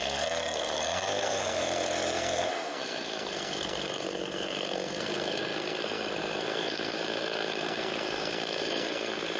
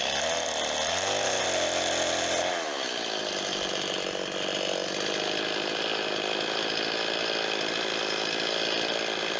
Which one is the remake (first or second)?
first